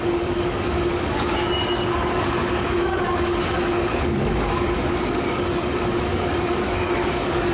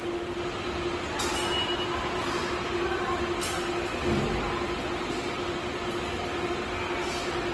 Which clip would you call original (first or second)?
second